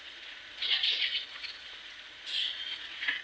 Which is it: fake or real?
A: fake